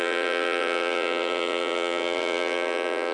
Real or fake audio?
fake